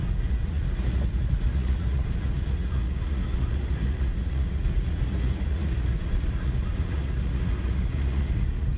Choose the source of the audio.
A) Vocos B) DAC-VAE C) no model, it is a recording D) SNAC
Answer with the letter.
A